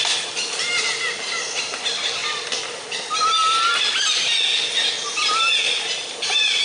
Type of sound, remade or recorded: recorded